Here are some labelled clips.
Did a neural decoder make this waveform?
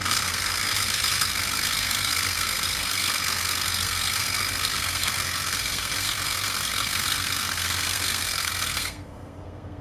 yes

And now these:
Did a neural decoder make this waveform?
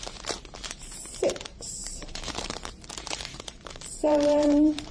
yes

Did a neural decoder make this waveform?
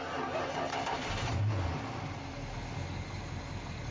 no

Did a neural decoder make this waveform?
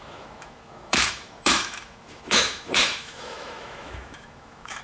yes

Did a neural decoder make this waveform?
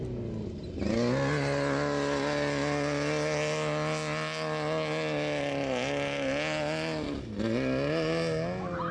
no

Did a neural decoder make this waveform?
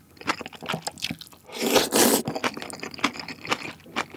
no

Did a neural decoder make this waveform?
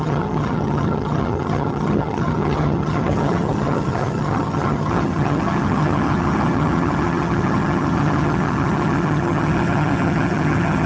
yes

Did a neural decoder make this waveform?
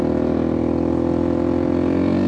no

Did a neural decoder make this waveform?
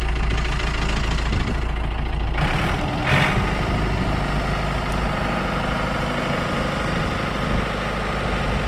no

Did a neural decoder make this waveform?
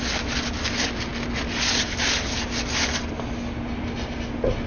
no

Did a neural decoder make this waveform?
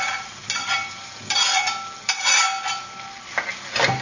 no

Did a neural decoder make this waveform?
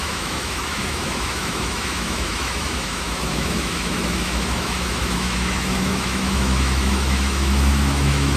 yes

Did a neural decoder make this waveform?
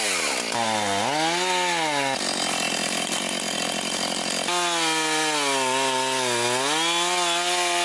no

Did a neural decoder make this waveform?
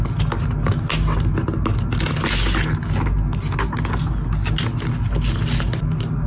no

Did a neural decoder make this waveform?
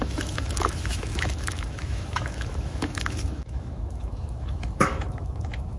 yes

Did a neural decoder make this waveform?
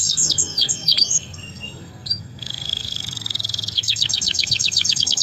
yes